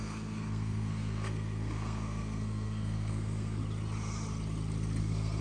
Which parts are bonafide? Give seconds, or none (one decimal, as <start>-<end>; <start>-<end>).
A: 3.6-5.0